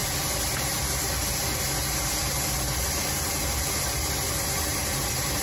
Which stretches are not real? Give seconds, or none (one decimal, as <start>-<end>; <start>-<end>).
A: none